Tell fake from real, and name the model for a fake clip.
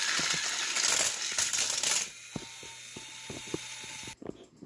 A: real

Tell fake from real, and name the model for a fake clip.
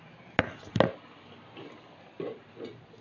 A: real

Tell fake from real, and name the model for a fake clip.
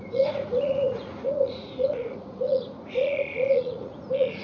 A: fake, vocoder, Vocos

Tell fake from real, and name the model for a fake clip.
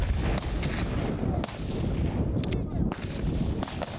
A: real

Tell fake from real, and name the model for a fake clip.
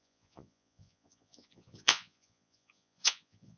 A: fake, vocoder, Vocos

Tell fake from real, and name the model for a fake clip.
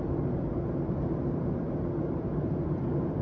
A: real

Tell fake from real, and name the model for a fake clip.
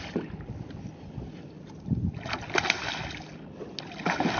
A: real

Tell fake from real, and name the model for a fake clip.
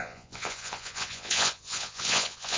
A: fake, vocoder, Vocos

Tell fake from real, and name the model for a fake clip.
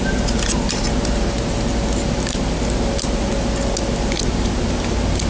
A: real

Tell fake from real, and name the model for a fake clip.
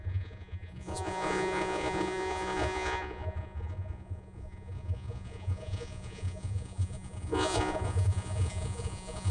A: fake, vocoder, Vocos